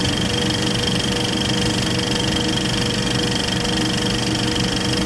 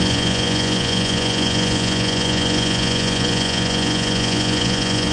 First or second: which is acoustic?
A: first